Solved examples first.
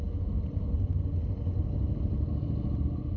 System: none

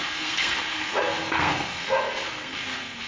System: codec, SNAC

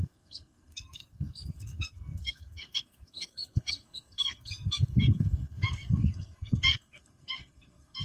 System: codec, SNAC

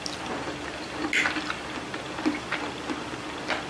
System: none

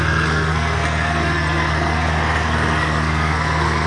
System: codec, SNAC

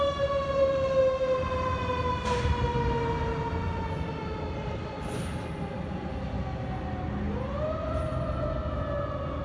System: none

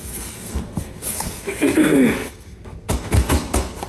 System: codec, SNAC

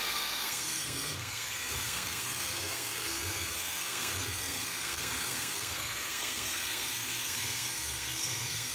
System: codec, SNAC